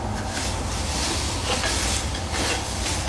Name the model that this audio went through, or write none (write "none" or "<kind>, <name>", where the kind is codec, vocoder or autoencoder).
none